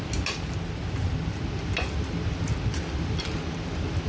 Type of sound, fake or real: real